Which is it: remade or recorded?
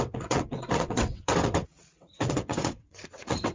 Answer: remade